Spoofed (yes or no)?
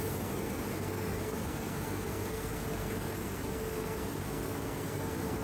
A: yes